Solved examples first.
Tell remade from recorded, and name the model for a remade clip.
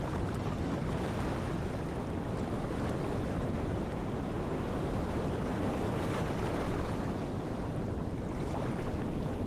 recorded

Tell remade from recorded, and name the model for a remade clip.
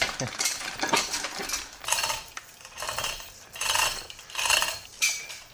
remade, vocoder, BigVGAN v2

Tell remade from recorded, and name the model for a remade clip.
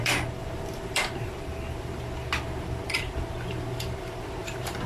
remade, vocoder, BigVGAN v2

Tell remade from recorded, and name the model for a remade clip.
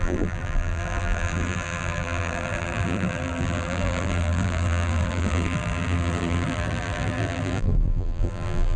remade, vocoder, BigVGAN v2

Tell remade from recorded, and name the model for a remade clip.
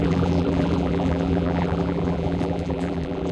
remade, vocoder, BigVGAN v2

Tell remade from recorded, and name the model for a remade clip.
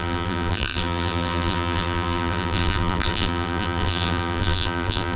remade, vocoder, BigVGAN v2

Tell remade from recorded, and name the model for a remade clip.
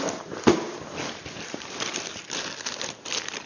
remade, vocoder, BigVGAN v2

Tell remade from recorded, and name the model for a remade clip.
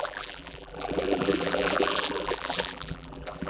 remade, vocoder, BigVGAN v2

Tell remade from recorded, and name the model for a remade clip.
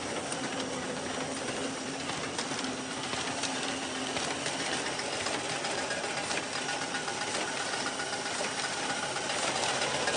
remade, vocoder, BigVGAN v2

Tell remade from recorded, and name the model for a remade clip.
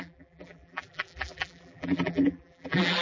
remade, vocoder, BigVGAN v2